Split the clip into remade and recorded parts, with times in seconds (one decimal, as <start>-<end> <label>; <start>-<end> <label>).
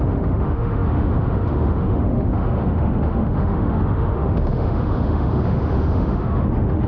0.0-6.9 remade